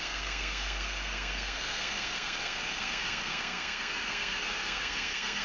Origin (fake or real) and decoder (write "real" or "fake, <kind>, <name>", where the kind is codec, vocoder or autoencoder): fake, codec, SNAC